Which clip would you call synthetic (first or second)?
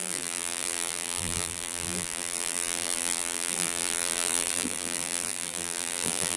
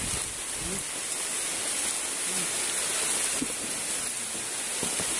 first